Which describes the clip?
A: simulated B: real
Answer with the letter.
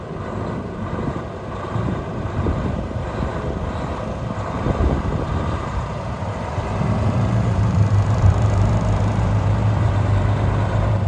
A